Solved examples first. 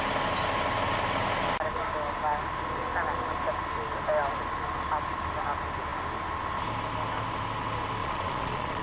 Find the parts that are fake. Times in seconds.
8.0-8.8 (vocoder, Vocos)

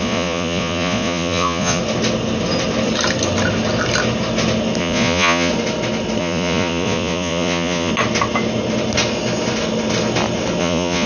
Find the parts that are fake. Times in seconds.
0.0-1.8 (vocoder, Vocos); 4.8-5.5; 6.2-7.9; 10.6-11.1

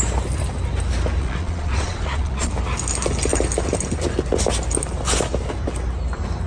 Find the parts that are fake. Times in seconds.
1.2-2.5 (vocoder, Vocos)

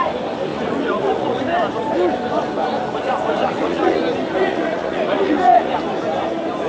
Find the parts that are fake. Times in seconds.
0.5-1.4 (vocoder, Vocos); 3.3-4.0; 4.4-5.8

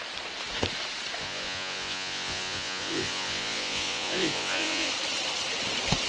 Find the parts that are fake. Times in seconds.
1.2-4.9 (vocoder, Vocos)